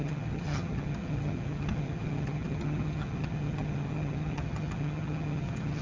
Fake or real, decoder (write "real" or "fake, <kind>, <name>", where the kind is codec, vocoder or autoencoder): fake, vocoder, HiFi-GAN